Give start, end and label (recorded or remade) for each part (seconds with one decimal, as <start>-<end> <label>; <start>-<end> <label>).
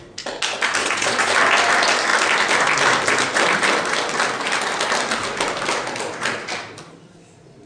0.0-0.8 recorded; 0.8-1.3 remade; 1.3-7.7 recorded